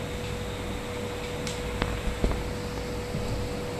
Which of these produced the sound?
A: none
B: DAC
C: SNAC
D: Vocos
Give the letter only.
A